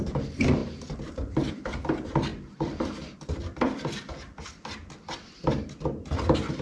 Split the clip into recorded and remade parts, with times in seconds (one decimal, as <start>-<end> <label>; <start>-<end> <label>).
0.0-6.6 recorded